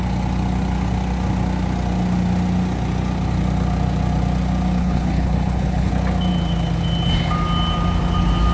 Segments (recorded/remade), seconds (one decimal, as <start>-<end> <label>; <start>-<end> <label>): 0.0-4.8 recorded; 4.8-5.9 remade; 5.9-8.5 recorded